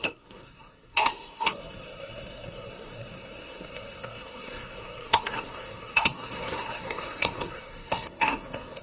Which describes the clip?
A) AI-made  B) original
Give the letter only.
A